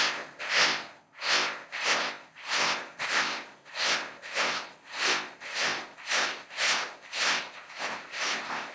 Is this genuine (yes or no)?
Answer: no